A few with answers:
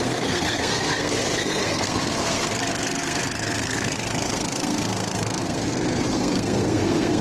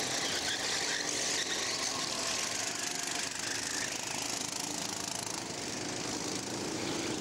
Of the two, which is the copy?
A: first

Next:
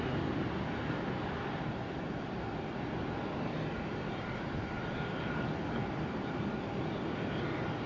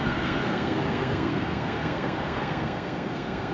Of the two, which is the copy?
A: second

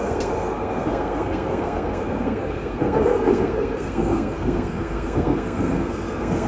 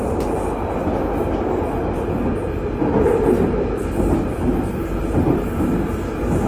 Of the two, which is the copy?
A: first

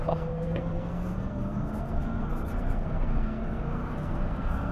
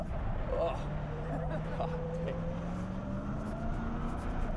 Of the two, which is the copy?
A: first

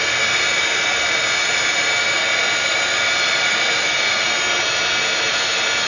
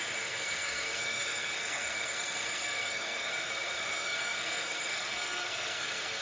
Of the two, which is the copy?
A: second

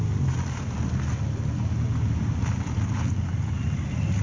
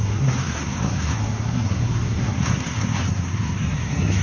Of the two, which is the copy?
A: second